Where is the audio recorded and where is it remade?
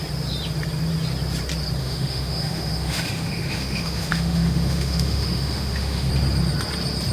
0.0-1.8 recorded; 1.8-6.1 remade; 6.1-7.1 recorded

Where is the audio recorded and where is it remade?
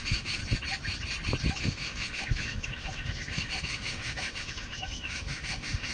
0.0-0.4 remade; 0.4-1.6 recorded; 1.6-5.9 remade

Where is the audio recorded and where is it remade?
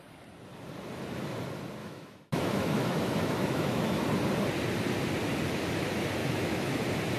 0.0-1.8 recorded; 1.8-4.0 remade; 4.0-6.2 recorded; 6.2-6.8 remade; 6.8-7.2 recorded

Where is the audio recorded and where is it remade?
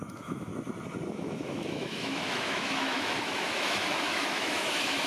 0.0-0.5 remade; 0.5-1.1 recorded; 1.1-5.1 remade